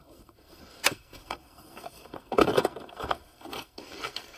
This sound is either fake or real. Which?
fake